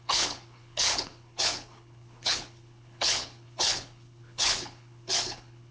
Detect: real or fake fake